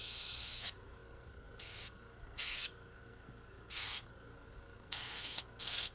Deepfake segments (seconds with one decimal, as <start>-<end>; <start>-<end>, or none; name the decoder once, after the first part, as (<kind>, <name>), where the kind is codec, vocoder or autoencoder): 0.0-5.9 (codec, SNAC)